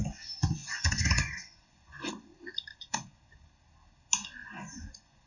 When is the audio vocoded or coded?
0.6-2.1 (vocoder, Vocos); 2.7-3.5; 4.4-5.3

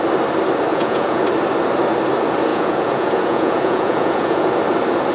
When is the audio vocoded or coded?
0.7-1.2 (vocoder, Vocos); 2.5-4.6

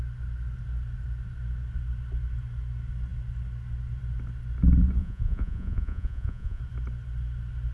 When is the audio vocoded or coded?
5.0-6.6 (vocoder, Vocos)

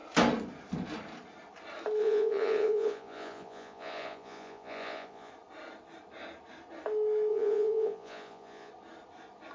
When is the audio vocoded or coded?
2.0-5.3 (vocoder, Vocos); 7.3-8.7

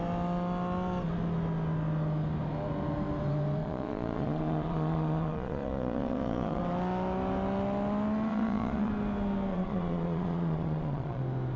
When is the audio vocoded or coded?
3.6-6.6 (vocoder, Vocos); 8.3-8.9; 9.5-11.2

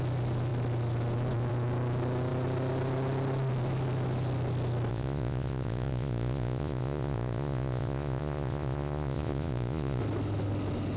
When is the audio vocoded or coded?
4.9-10.0 (vocoder, Vocos)

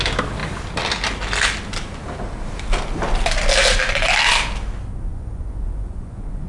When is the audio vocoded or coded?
5.1-6.5 (vocoder, Vocos)